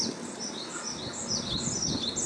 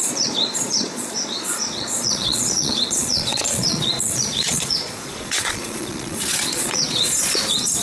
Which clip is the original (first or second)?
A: first